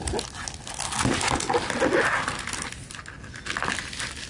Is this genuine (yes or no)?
yes